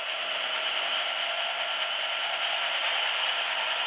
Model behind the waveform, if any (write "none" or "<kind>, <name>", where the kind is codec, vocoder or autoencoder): none